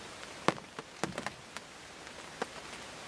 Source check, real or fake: real